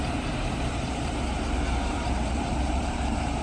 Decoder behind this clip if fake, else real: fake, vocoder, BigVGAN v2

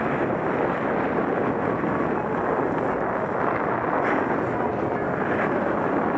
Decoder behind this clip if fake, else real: real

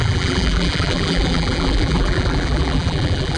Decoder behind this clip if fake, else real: fake, vocoder, BigVGAN v2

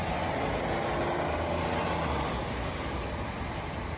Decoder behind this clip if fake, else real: real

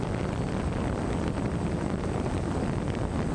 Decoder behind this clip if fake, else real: fake, vocoder, BigVGAN v2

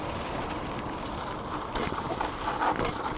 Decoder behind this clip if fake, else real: fake, vocoder, BigVGAN v2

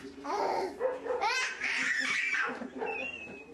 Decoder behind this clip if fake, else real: fake, vocoder, BigVGAN v2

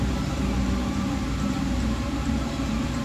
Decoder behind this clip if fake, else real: fake, vocoder, BigVGAN v2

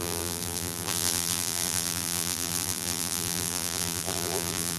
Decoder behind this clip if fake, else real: fake, vocoder, BigVGAN v2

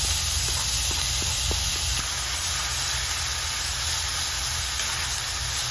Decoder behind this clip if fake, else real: real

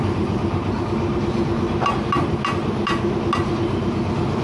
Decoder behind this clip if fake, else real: real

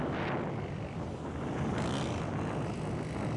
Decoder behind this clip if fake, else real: real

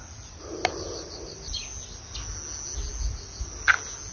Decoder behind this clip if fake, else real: real